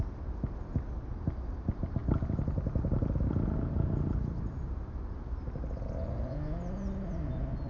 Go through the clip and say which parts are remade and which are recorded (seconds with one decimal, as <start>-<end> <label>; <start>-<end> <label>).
0.0-7.7 recorded

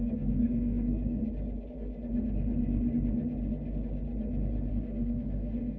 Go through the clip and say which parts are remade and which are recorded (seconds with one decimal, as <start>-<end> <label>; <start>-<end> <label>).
0.0-1.2 remade; 1.2-4.7 recorded; 4.7-5.8 remade

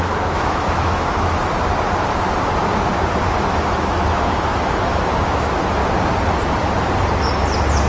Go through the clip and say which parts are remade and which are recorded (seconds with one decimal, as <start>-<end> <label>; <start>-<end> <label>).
0.0-1.4 remade; 1.4-3.1 recorded; 3.1-5.8 remade; 5.8-7.9 recorded

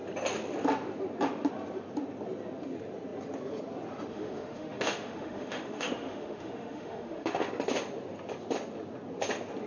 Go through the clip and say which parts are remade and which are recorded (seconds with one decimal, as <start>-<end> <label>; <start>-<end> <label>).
0.0-4.1 recorded; 4.1-7.5 remade; 7.5-9.7 recorded

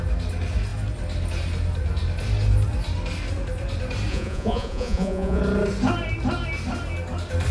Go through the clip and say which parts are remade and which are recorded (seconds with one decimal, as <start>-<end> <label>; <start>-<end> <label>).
0.0-4.1 recorded; 4.1-5.4 remade; 5.4-7.5 recorded

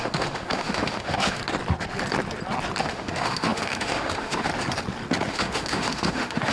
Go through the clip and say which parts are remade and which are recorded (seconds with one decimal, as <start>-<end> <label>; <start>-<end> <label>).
0.0-1.4 remade; 1.4-2.8 recorded; 2.8-4.5 remade; 4.5-5.3 recorded; 5.3-6.5 remade

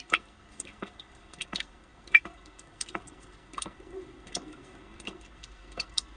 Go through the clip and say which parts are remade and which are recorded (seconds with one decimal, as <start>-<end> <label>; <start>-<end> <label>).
0.0-6.2 remade

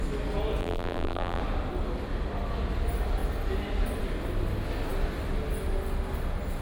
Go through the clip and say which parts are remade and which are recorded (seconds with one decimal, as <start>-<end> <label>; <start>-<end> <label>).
0.0-0.6 recorded; 0.6-1.4 remade; 1.4-6.6 recorded